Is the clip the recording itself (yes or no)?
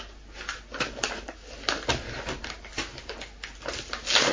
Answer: yes